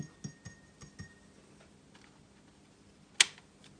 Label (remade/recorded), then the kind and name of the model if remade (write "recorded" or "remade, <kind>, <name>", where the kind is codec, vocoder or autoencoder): recorded